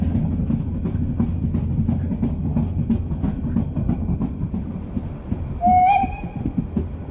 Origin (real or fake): real